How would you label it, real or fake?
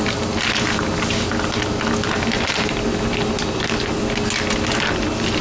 real